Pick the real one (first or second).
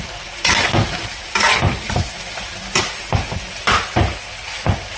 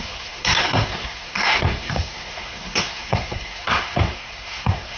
first